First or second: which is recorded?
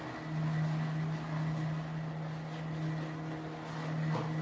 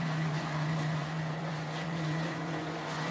first